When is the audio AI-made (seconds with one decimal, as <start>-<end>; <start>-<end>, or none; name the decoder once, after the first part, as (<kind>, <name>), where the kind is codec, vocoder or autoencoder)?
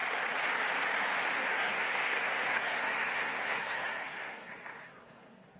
1.5-5.6 (codec, SNAC)